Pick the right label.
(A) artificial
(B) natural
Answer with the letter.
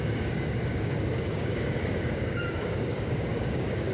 A